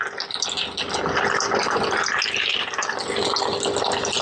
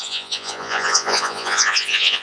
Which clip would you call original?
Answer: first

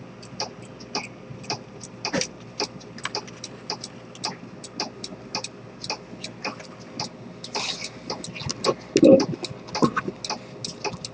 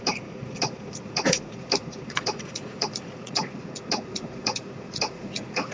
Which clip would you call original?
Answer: first